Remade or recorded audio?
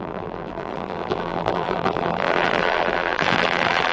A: remade